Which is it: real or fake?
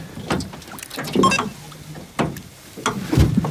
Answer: real